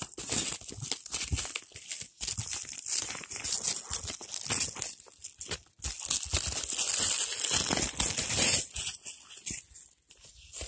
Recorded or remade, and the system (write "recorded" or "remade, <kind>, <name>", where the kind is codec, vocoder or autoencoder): recorded